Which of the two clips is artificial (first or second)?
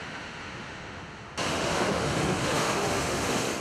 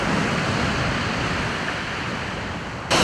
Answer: first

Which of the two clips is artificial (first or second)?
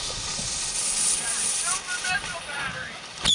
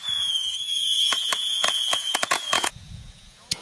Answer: second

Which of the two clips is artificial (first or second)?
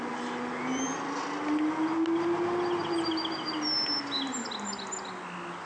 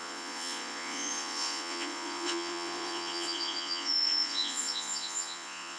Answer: second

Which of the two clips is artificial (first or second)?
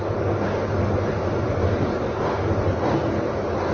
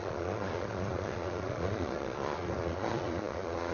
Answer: second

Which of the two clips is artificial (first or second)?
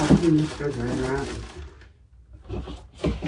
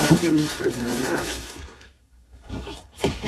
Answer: second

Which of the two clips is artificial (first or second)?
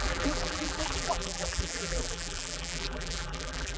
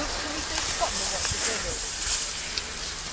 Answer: first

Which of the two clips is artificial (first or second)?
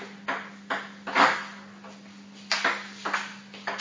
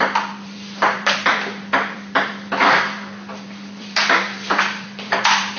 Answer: second